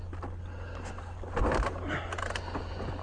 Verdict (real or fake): real